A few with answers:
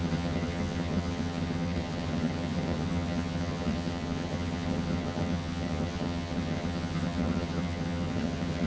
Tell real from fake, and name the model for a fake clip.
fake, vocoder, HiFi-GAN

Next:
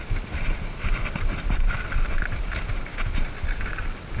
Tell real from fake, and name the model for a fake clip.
real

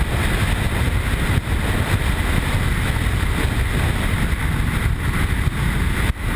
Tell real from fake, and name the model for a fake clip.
real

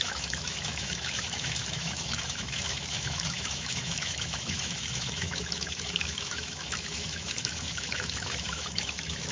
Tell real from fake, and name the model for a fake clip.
fake, autoencoder, DAC-VAE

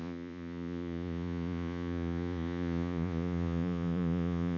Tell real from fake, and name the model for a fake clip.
fake, vocoder, Vocos